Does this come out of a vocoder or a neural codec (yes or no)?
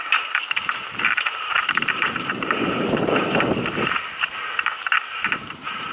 yes